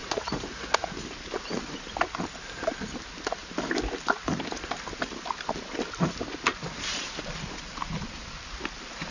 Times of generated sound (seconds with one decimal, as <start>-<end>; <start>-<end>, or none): 0.0-0.9